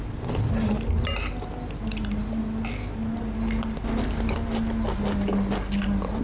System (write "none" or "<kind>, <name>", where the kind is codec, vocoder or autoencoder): none